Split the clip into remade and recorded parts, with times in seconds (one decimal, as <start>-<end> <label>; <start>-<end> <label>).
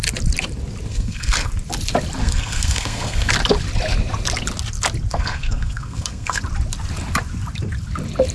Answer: 0.0-0.9 recorded; 0.9-1.5 remade; 1.5-2.2 recorded; 2.2-3.3 remade; 3.3-5.1 recorded; 5.1-6.4 remade; 6.4-8.3 recorded